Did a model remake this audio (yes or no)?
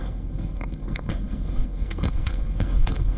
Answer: yes